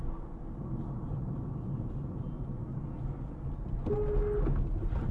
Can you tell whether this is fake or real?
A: real